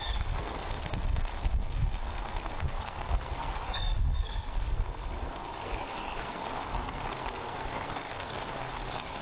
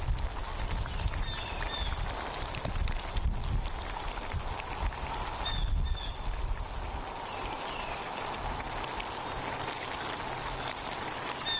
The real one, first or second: second